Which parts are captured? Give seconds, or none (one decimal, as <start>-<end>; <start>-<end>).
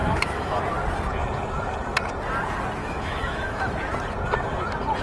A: 0.6-2.8; 3.7-5.0